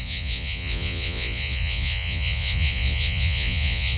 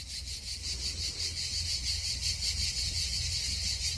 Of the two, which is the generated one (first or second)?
first